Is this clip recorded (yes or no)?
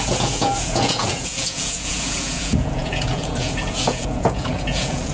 no